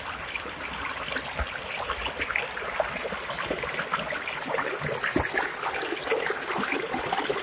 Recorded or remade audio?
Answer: recorded